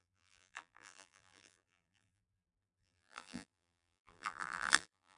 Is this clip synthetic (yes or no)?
yes